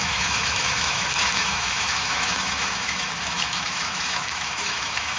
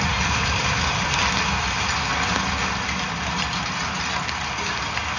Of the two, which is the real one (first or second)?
second